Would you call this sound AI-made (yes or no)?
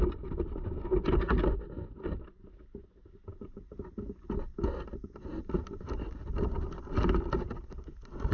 no